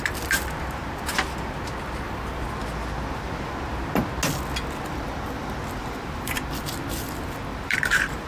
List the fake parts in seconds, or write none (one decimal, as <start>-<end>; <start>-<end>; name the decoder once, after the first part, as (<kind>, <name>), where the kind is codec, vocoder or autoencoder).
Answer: 5.8-6.4 (vocoder, BigVGAN v2); 7.5-8.3